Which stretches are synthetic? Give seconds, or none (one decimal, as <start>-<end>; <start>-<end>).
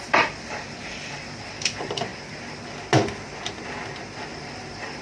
0.0-2.1; 4.4-5.0